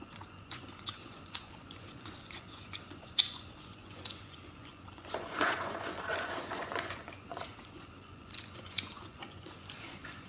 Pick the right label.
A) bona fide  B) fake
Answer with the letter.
B